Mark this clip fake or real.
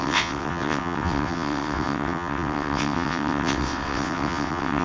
fake